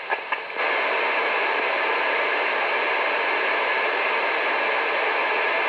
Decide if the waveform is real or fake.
real